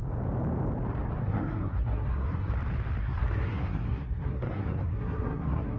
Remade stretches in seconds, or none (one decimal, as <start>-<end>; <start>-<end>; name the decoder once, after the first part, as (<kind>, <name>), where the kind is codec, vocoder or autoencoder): 1.2-2.5 (codec, SNAC); 3.0-5.8